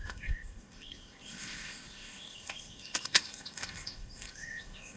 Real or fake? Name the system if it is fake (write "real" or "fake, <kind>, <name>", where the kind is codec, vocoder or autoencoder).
fake, codec, ZipCodec